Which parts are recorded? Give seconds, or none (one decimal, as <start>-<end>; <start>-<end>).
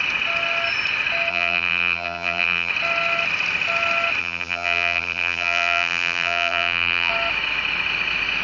0.0-1.3; 2.7-4.2; 7.1-8.4